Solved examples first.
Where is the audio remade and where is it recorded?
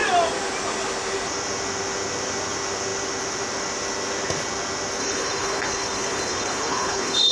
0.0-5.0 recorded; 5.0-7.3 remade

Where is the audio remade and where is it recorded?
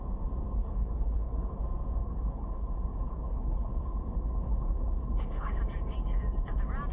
0.0-0.6 recorded; 0.6-1.6 remade; 1.6-2.0 recorded; 2.0-5.6 remade; 5.6-6.9 recorded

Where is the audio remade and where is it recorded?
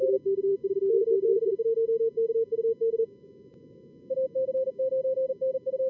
0.0-5.9 recorded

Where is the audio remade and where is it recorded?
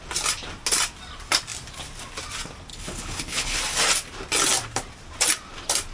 0.0-2.7 recorded; 2.7-3.6 remade; 3.6-5.9 recorded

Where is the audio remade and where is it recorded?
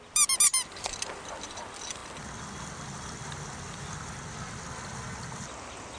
0.0-6.0 recorded